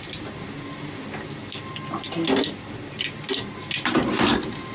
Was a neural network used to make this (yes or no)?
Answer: no